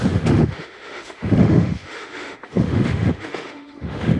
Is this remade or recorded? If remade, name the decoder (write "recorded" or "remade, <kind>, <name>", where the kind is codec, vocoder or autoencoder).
remade, autoencoder, DAC-VAE